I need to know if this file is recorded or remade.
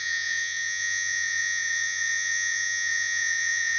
remade